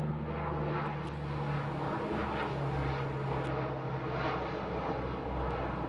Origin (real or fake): real